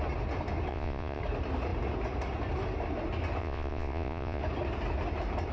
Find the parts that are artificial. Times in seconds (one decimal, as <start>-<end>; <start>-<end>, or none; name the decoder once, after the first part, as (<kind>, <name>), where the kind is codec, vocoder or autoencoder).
0.7-1.2 (vocoder, Vocos); 3.4-4.4